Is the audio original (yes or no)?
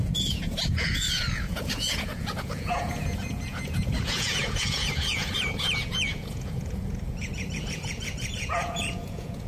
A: no